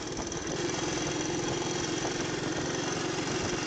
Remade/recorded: recorded